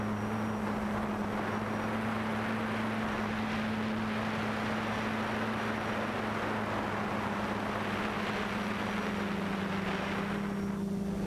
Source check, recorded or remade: recorded